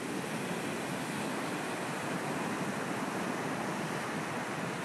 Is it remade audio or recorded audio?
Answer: recorded